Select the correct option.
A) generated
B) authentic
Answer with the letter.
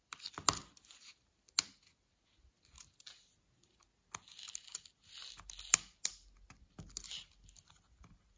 B